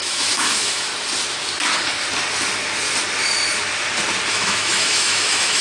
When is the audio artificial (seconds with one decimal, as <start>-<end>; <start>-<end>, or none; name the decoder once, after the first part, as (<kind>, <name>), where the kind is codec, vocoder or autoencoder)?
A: 0.0-0.9 (autoencoder, DAC-VAE); 4.3-5.6

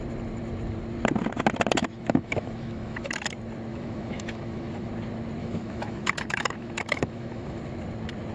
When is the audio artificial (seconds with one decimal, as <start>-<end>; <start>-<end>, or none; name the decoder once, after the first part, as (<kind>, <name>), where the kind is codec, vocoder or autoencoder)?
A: 1.8-3.1 (autoencoder, DAC-VAE); 3.7-4.9; 5.4-7.6

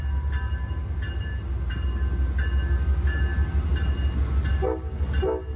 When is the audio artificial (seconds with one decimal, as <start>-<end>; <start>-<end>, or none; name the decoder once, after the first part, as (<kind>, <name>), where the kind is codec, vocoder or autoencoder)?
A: none

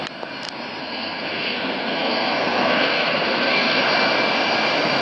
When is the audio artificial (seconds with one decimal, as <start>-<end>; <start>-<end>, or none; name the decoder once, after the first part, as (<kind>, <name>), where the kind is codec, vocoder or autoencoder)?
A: 0.8-3.8 (codec, SNAC)

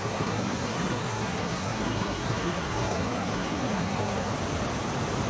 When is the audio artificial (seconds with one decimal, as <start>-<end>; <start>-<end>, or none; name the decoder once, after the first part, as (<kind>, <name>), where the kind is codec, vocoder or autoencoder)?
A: 0.0-4.3 (codec, SNAC)